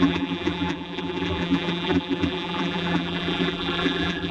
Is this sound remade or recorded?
remade